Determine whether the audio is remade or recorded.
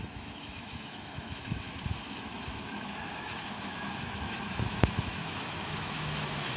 remade